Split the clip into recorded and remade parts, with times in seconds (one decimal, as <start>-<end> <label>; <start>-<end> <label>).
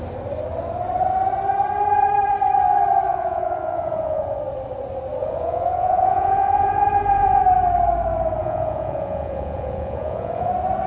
0.0-3.1 recorded; 3.1-4.4 remade; 4.4-5.2 recorded; 5.2-7.4 remade; 7.4-8.4 recorded; 8.4-10.5 remade; 10.5-10.9 recorded